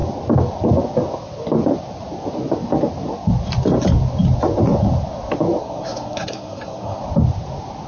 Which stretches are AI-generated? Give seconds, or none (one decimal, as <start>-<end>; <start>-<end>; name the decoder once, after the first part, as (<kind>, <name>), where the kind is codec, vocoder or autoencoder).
5.6-7.0 (codec, SNAC)